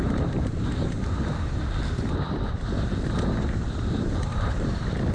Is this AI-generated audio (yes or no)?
yes